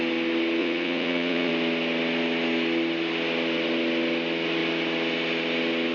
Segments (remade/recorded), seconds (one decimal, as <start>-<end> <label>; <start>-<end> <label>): 0.0-0.6 recorded; 0.6-1.5 remade; 1.5-5.9 recorded